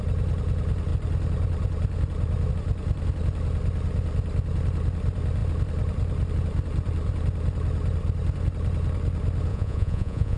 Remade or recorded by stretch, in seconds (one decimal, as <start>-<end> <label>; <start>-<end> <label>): 0.0-9.5 recorded; 9.5-10.4 remade